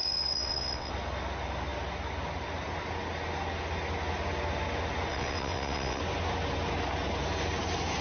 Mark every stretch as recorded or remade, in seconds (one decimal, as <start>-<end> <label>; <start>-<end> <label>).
0.0-0.9 remade; 0.9-5.1 recorded; 5.1-6.0 remade; 6.0-8.0 recorded